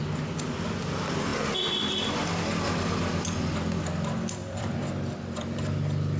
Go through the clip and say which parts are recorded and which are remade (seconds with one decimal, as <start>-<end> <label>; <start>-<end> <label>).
0.0-4.4 recorded; 4.4-4.9 remade; 4.9-6.2 recorded